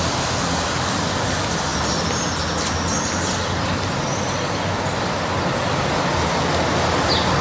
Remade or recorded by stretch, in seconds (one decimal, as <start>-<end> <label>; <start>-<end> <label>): 0.0-7.4 recorded